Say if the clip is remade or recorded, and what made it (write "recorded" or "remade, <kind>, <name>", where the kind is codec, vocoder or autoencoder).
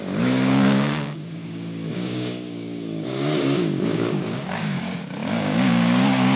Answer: remade, codec, DAC